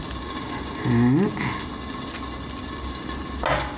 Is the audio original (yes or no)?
yes